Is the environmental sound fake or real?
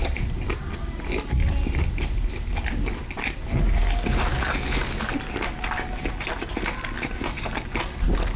real